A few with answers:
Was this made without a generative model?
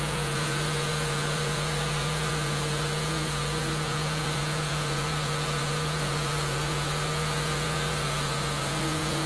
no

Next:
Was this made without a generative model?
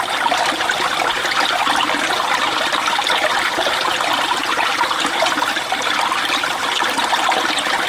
yes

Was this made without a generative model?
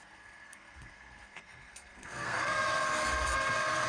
no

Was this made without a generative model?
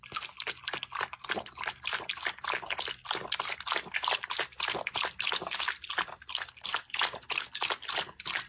yes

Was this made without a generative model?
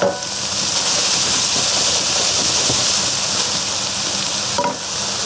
yes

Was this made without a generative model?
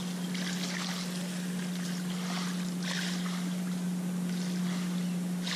yes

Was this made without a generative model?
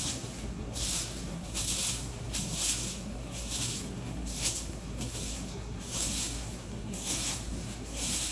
no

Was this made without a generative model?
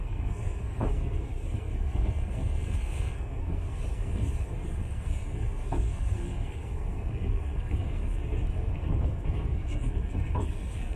no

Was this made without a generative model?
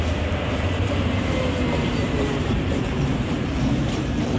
no